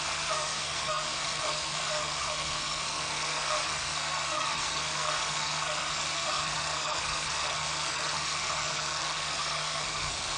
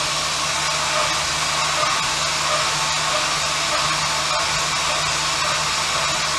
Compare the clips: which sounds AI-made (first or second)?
first